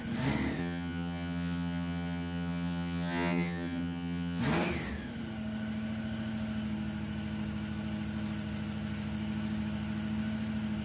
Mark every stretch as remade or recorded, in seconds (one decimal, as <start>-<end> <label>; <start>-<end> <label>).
0.0-0.6 recorded; 0.6-4.4 remade; 4.4-10.8 recorded